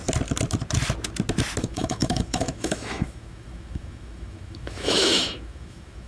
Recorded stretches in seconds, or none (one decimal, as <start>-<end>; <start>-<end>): 0.0-1.6